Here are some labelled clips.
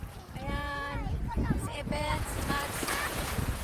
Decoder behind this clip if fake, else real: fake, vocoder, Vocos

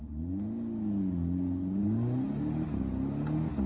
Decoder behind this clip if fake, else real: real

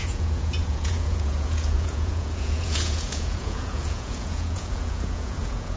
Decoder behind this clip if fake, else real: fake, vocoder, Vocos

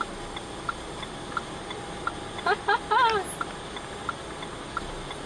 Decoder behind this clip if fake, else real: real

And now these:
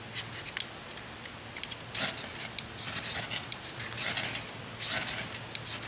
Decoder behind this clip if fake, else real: real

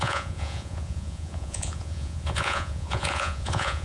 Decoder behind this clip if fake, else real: fake, vocoder, Vocos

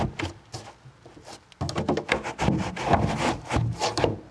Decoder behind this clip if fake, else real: real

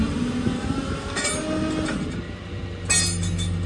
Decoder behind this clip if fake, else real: real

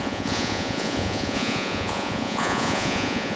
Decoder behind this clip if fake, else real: fake, vocoder, Vocos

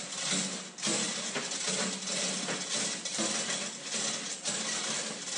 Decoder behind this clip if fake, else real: real